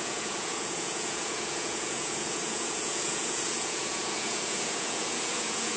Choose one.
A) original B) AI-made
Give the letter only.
B